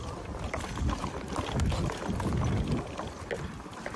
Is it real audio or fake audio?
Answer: real